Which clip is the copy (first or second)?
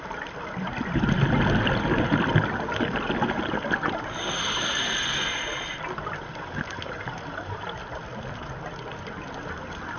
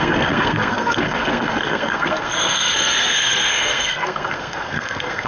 second